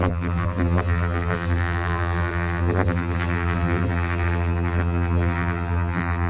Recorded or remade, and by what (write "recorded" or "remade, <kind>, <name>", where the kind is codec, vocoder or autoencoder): remade, vocoder, BigVGAN v2